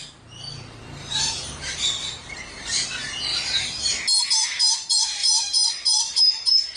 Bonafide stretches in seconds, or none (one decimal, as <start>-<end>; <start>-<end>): 0.0-1.0; 2.8-3.3; 3.9-5.2